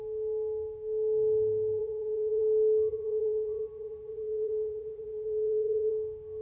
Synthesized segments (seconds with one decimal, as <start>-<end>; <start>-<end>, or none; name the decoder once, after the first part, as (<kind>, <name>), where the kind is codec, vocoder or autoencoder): 1.8-2.4 (vocoder, Vocos); 2.9-5.9

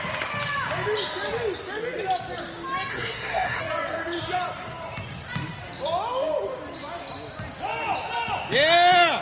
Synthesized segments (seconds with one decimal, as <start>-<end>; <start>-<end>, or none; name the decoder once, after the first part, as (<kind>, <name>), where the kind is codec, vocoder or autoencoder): 2.9-3.6 (codec, SNAC)

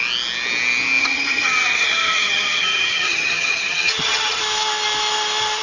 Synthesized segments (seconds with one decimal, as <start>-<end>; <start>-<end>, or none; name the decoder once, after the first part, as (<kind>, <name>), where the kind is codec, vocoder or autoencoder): 1.0-4.4 (vocoder, HiFi-GAN)

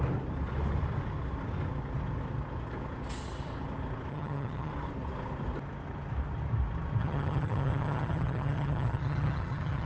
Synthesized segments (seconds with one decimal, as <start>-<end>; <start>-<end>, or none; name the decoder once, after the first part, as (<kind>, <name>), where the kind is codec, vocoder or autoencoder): 4.1-4.7 (vocoder, HiFi-GAN); 7.0-9.9